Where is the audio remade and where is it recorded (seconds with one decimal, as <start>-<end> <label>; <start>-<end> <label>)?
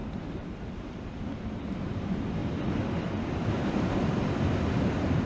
0.0-2.4 remade; 2.4-3.2 recorded; 3.2-5.3 remade